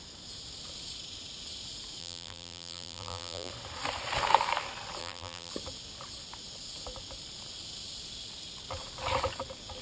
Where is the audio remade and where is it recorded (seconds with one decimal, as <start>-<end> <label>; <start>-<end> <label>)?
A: 0.0-2.0 recorded; 2.0-3.5 remade; 3.5-5.0 recorded; 5.0-5.5 remade; 5.5-9.8 recorded